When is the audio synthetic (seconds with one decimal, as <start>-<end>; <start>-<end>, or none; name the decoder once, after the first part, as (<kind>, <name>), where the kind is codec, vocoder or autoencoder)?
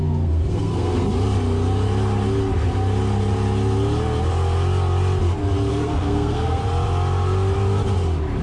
0.0-1.0 (codec, SNAC); 5.7-6.6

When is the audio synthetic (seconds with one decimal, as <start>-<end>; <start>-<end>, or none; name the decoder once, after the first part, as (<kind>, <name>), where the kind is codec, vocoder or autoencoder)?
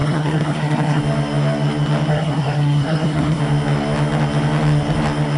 0.0-1.0 (codec, SNAC); 2.1-3.4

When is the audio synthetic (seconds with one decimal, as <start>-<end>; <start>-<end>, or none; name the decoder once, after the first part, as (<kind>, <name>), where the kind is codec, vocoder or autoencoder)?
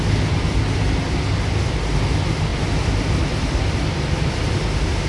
2.5-3.9 (vocoder, BigVGAN v2)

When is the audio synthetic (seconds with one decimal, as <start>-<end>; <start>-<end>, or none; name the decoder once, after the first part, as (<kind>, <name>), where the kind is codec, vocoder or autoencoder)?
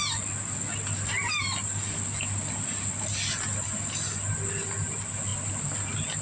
none